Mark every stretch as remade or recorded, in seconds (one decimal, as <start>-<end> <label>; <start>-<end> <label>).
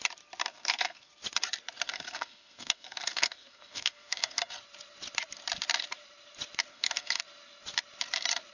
0.0-0.4 recorded; 0.4-1.1 remade; 1.1-1.9 recorded; 1.9-4.5 remade; 4.5-6.7 recorded; 6.7-7.2 remade; 7.2-8.5 recorded